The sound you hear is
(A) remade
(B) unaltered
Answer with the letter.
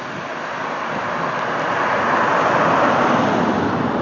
B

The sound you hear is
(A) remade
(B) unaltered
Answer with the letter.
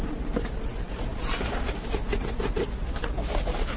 B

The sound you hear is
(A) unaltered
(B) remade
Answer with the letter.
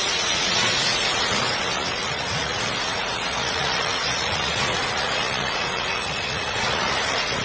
B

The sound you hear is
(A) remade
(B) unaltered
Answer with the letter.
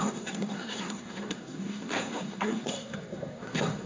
A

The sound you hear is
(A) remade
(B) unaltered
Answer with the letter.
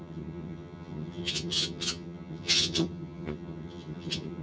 A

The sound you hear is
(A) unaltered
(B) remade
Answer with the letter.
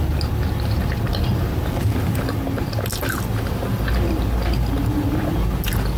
A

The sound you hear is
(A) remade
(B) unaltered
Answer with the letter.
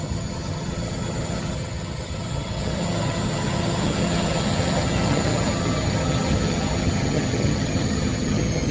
A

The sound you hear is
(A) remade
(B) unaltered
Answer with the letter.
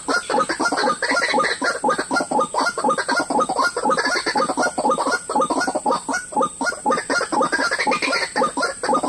B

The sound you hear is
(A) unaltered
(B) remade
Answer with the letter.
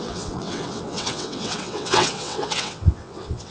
B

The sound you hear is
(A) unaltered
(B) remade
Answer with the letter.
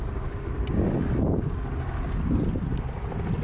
A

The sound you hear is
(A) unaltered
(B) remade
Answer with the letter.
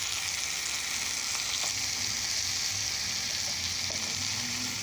A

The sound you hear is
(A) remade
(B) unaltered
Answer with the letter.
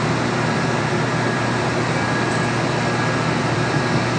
A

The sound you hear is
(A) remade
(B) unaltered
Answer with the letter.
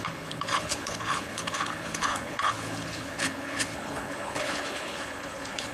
A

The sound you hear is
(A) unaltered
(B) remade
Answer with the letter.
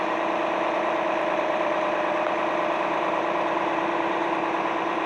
B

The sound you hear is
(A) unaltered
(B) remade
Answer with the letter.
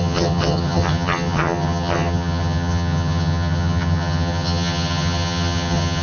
B